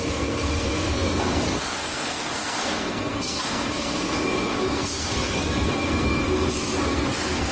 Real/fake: fake